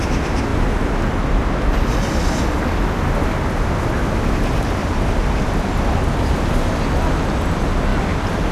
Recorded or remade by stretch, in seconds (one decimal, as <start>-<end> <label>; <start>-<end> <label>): 0.0-0.5 recorded; 0.5-1.4 remade; 1.4-4.8 recorded; 4.8-5.8 remade; 5.8-8.5 recorded